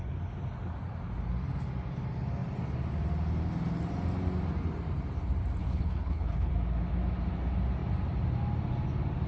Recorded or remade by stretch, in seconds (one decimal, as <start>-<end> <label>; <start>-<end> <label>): 0.0-5.6 recorded; 5.6-6.5 remade; 6.5-9.3 recorded